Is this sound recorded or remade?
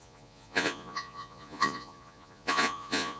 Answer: remade